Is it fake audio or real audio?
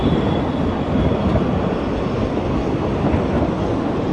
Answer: real